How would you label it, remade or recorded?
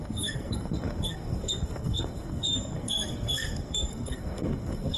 remade